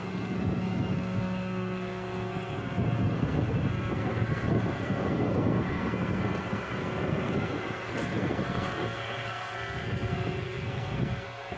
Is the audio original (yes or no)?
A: no